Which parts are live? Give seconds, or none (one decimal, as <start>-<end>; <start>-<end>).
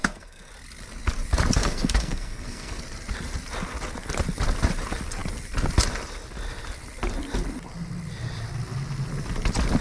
0.5-1.6; 2.8-9.8